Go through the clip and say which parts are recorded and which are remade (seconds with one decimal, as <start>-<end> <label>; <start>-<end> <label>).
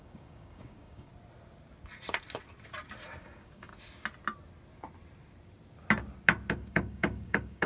0.0-1.1 remade; 1.1-3.2 recorded; 3.2-3.7 remade; 3.7-6.5 recorded; 6.5-7.7 remade